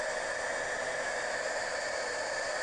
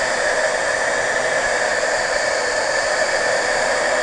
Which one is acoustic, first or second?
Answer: first